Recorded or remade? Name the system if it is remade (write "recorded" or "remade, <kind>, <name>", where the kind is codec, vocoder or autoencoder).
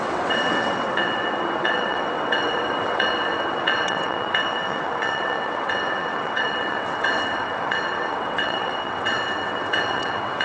remade, vocoder, WaveNeXt